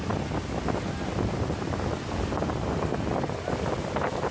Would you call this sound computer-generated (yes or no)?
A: no